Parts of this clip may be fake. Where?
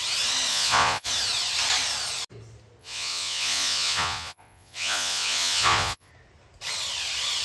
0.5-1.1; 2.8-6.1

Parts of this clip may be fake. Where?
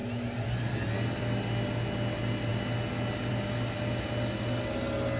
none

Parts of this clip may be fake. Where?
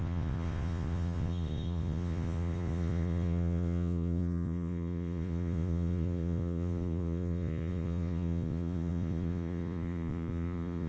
0.0-10.9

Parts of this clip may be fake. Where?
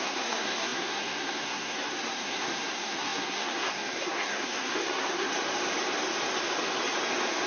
0.0-5.3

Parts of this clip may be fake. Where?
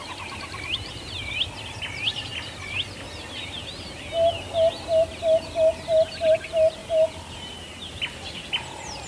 none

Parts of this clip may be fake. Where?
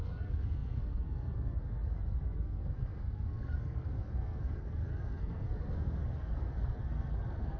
0.0-7.6